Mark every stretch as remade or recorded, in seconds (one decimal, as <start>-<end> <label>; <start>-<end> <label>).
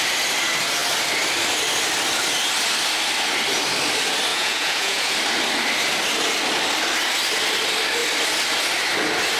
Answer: 0.0-4.3 recorded; 4.3-5.1 remade; 5.1-9.4 recorded